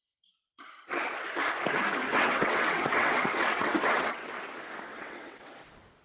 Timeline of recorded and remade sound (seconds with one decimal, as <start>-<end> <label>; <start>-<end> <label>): 0.0-2.1 recorded; 2.1-4.3 remade; 4.3-4.9 recorded; 4.9-5.5 remade; 5.5-6.0 recorded